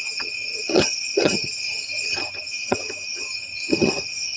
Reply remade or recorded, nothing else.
remade